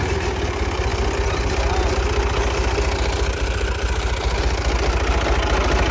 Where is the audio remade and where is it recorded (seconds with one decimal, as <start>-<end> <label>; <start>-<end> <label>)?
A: 0.0-5.9 recorded